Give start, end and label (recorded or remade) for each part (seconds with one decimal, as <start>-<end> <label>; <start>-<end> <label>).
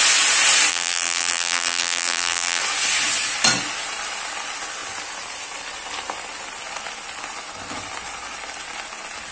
0.0-0.7 recorded; 0.7-2.6 remade; 2.6-9.3 recorded